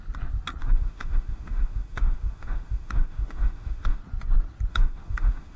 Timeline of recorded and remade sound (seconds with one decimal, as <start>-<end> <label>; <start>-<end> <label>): 0.0-0.6 recorded; 0.6-4.0 remade; 4.0-4.7 recorded; 4.7-5.6 remade